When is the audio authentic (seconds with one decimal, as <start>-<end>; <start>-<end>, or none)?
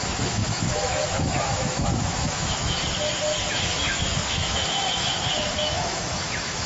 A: 2.8-3.5